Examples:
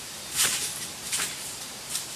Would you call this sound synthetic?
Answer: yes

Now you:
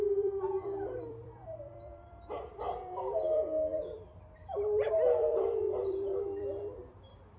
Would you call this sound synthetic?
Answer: yes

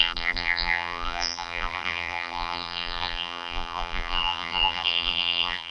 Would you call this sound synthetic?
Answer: yes